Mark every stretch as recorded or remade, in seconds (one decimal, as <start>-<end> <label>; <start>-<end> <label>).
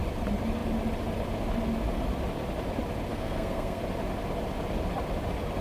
0.0-3.1 recorded; 3.1-3.8 remade; 3.8-5.6 recorded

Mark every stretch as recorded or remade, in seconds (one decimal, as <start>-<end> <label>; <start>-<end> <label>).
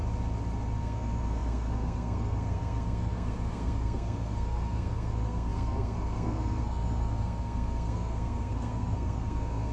0.0-0.8 recorded; 0.8-9.7 remade